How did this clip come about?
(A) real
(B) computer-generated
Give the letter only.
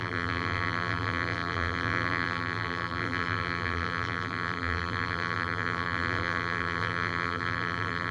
B